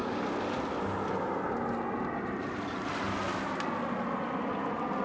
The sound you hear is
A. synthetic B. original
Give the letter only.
B